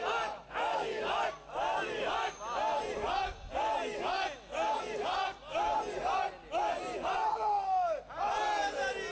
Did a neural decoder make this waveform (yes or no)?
no